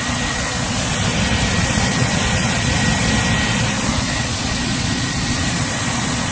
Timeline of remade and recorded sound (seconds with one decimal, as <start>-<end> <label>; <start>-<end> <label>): 0.0-1.1 remade; 1.1-1.6 recorded; 1.6-2.8 remade; 2.8-3.5 recorded; 3.5-6.3 remade